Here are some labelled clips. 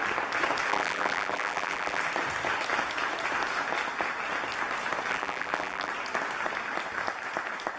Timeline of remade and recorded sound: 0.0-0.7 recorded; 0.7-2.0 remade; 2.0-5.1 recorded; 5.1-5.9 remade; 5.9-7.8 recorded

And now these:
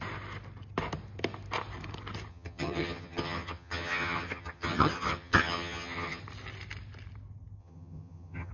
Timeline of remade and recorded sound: 0.0-2.3 recorded; 2.3-6.2 remade; 6.2-7.6 recorded; 7.6-8.5 remade

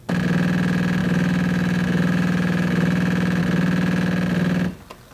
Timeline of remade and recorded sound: 0.0-1.0 recorded; 1.0-3.4 remade; 3.4-5.1 recorded

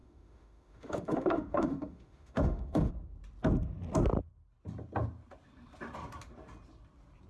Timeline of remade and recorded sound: 0.0-2.9 remade; 2.9-7.3 recorded

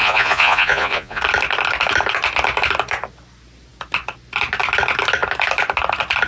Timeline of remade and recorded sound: 0.0-1.2 remade; 1.2-6.3 recorded

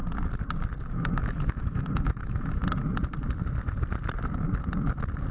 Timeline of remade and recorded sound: 0.0-0.9 recorded; 0.9-2.6 remade; 2.6-5.3 recorded

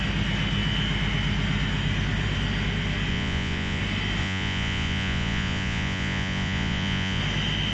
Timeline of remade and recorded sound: 0.0-3.1 recorded; 3.1-3.8 remade; 3.8-4.2 recorded; 4.2-7.2 remade; 7.2-7.7 recorded